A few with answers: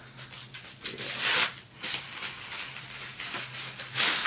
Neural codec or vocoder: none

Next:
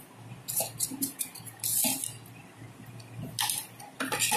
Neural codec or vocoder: none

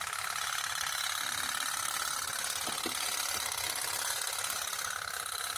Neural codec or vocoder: none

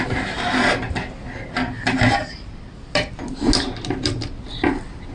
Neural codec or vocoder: none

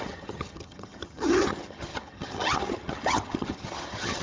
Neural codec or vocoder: vocoder, HiFi-GAN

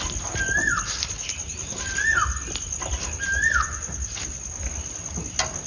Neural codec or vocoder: none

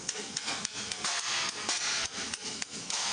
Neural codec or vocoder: codec, SNAC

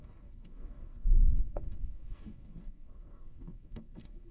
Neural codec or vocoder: codec, SNAC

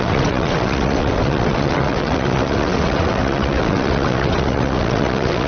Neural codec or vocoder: vocoder, WaveNeXt